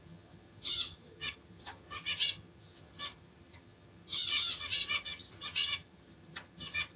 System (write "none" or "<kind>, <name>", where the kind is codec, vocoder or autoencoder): vocoder, HiFi-GAN